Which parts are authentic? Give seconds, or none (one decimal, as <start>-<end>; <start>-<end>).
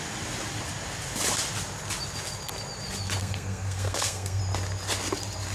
0.0-3.2; 4.4-5.5